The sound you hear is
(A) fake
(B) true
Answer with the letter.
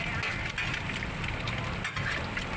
B